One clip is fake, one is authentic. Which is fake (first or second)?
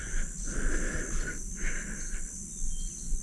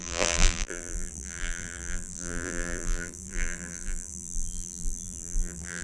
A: second